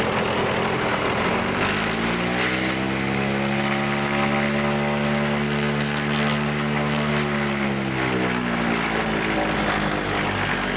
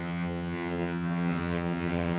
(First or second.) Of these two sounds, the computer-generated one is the second